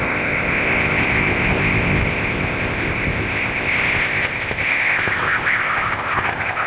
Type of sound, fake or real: fake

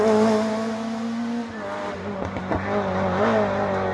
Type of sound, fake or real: real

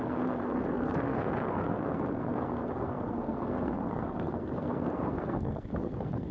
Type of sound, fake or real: fake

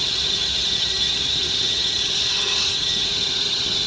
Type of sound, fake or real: fake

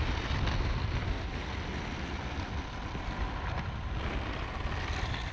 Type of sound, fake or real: real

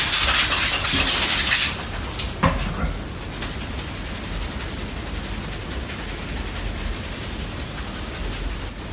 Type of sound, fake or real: real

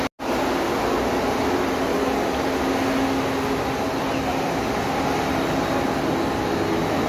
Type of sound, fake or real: real